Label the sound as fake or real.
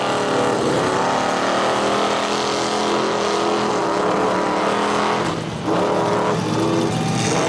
real